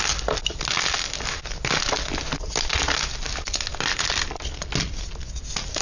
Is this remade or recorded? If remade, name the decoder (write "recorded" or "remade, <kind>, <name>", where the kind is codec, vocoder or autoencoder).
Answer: recorded